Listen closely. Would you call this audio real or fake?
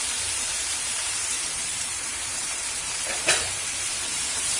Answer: fake